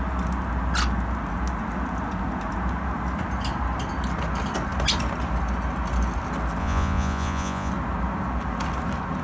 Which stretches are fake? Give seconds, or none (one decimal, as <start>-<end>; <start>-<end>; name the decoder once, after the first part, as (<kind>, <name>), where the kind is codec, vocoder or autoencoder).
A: 6.6-7.7 (vocoder, Vocos)